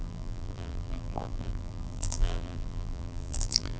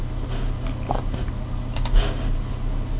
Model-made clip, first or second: first